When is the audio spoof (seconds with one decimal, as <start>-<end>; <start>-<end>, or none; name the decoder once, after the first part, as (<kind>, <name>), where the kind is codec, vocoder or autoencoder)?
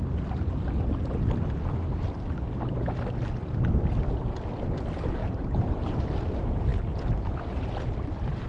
5.2-5.9 (vocoder, BigVGAN v2)